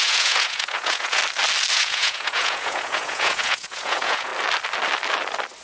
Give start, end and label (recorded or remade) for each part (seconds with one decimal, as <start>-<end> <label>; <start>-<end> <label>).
0.0-1.2 remade; 1.2-1.7 recorded; 1.7-4.3 remade; 4.3-5.6 recorded